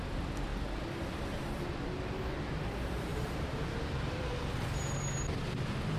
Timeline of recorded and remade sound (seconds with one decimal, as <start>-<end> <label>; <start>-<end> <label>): 0.0-6.0 recorded